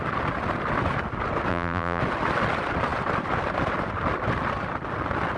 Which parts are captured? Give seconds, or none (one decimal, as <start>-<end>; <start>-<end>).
0.0-1.5; 2.0-5.4